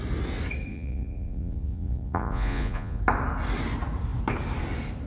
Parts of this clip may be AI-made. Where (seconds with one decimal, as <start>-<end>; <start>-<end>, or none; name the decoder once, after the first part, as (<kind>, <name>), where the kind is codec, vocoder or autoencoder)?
0.7-3.0 (vocoder, Vocos)